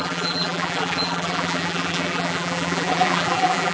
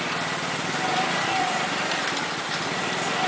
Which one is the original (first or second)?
second